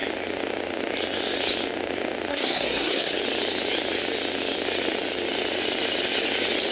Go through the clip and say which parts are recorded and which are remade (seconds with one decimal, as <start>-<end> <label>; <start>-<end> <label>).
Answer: 0.0-2.3 recorded; 2.3-3.2 remade; 3.2-6.7 recorded